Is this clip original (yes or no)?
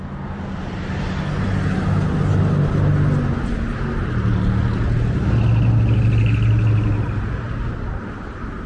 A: yes